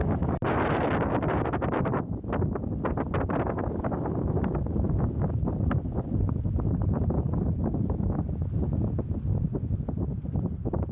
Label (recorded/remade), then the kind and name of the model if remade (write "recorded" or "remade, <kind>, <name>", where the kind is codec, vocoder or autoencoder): recorded